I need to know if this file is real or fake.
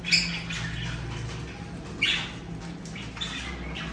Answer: real